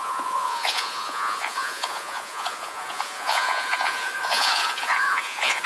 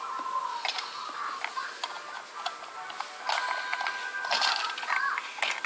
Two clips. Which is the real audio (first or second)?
second